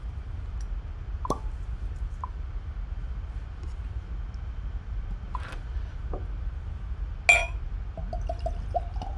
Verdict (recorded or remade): recorded